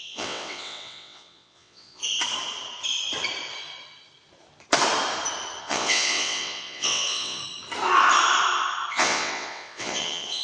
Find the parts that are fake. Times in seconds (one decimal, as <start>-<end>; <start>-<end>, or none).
0.0-2.0; 5.6-7.4; 8.9-10.4